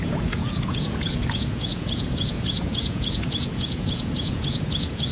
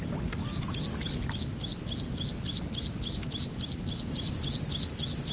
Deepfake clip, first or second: first